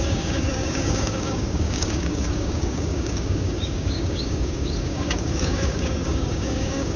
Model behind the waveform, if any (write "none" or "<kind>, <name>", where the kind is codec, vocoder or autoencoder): codec, DAC